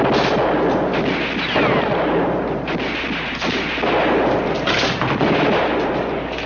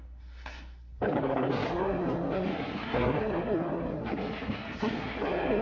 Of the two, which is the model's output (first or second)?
second